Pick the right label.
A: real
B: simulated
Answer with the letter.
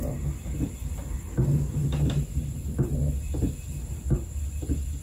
A